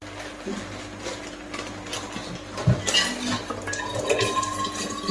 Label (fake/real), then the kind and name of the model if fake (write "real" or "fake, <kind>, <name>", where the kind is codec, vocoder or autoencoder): real